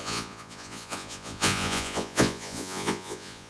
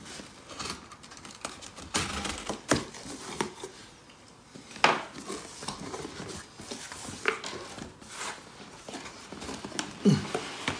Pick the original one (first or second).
second